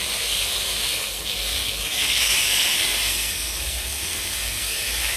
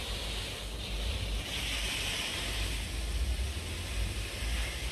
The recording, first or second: second